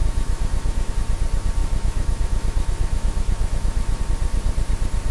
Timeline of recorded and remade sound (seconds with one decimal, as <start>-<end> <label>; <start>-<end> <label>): 0.0-0.9 remade; 0.9-1.6 recorded; 1.6-4.0 remade; 4.0-5.1 recorded